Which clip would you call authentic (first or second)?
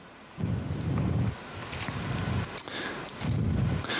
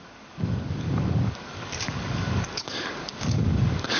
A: first